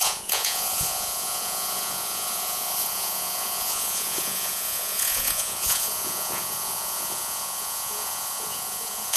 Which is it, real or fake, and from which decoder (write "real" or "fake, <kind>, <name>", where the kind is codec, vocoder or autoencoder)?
fake, vocoder, Vocos